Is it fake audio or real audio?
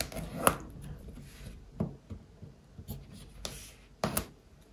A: real